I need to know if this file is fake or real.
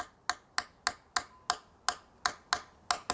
real